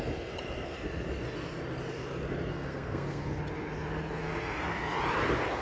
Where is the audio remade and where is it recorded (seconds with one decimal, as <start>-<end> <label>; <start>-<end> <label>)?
0.0-2.5 recorded; 2.5-3.4 remade; 3.4-5.6 recorded